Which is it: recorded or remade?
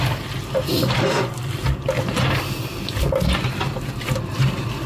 recorded